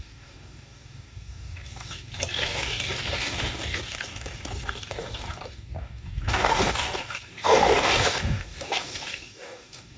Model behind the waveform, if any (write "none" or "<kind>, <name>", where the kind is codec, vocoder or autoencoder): codec, DAC